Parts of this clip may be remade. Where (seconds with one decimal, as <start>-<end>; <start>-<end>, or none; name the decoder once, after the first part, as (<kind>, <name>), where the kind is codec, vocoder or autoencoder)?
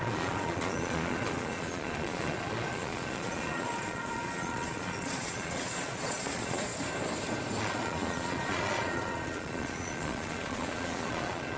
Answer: 0.0-6.7 (vocoder, Vocos); 7.6-11.6